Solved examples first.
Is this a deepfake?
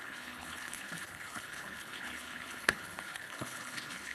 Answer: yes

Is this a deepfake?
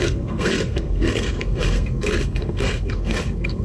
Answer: yes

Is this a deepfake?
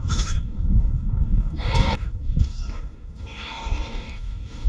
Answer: yes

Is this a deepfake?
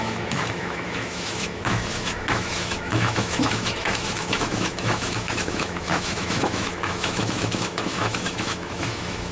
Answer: yes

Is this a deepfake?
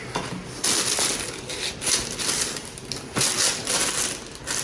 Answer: no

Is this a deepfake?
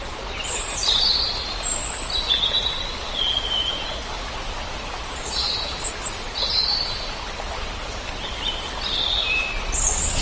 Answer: no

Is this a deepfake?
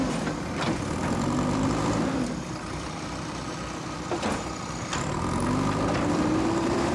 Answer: yes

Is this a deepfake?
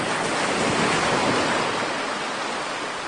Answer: no